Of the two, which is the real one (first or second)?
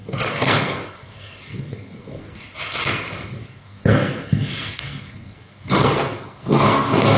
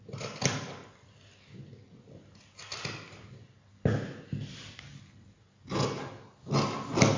second